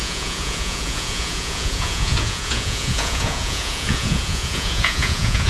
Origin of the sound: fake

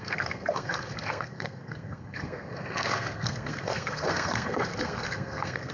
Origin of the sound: fake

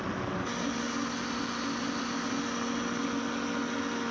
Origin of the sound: real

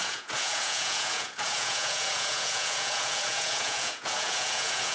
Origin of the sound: fake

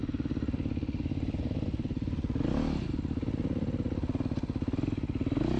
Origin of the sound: real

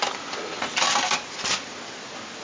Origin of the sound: real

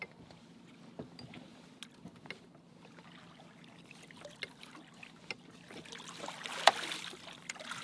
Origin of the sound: real